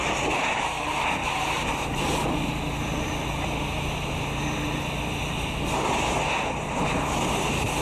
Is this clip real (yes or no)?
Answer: yes